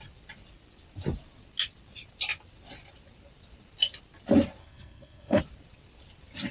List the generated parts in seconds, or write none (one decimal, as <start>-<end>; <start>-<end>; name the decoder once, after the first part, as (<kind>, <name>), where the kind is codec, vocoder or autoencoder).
4.6-5.4 (codec, SNAC)